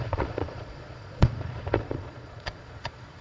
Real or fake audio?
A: fake